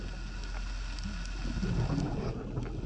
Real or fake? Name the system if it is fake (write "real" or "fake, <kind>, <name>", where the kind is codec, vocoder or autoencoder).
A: real